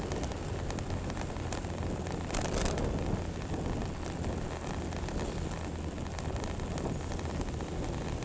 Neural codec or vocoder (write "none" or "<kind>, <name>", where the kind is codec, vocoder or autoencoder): none